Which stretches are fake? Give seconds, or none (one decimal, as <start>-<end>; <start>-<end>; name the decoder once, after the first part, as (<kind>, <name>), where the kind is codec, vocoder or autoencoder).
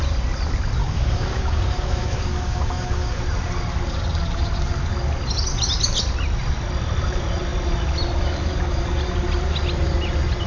0.8-3.2 (codec, DAC)